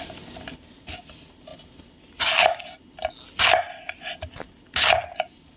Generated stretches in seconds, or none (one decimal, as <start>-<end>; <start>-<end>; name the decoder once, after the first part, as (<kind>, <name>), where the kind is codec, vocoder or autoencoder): none